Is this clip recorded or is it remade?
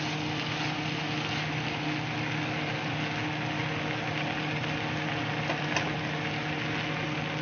recorded